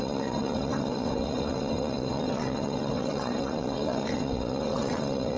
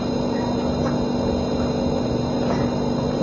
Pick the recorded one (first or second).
second